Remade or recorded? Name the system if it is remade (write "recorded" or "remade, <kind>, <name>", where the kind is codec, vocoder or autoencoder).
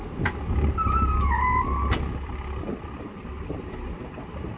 recorded